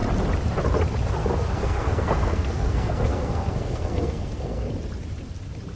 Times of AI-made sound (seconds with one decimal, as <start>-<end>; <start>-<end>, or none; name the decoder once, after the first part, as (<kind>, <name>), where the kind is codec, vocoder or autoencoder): 1.2-4.7 (codec, SNAC)